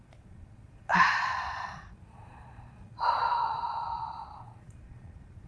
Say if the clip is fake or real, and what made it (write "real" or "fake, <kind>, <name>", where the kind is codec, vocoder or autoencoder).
fake, vocoder, Vocos